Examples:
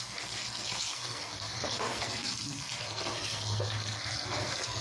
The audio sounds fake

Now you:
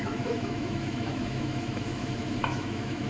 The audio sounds fake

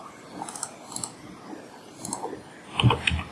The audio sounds real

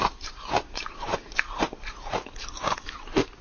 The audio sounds fake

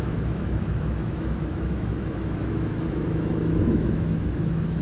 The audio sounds fake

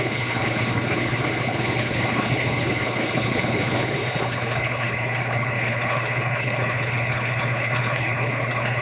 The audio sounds fake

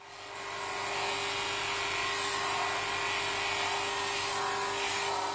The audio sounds real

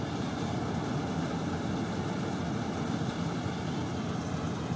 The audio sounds real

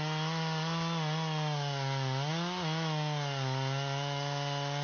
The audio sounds real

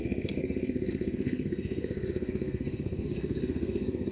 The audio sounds fake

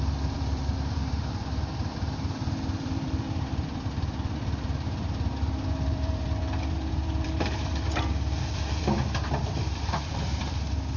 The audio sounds fake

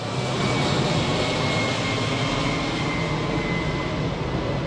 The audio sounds real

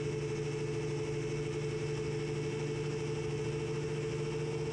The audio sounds real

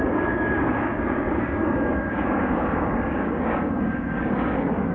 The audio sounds fake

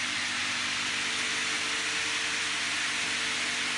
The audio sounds real